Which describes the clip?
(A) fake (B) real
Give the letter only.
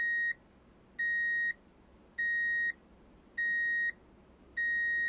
B